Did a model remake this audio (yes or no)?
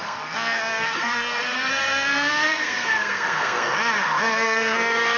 yes